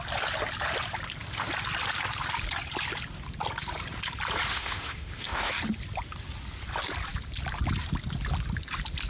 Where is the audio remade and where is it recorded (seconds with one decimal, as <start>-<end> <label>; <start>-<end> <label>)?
0.0-4.5 recorded; 4.5-5.5 remade; 5.5-9.1 recorded